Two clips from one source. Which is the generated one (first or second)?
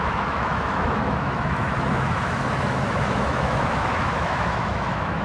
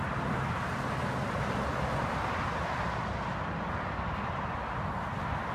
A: first